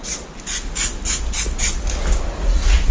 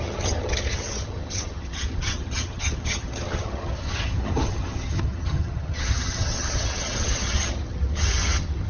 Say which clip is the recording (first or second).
first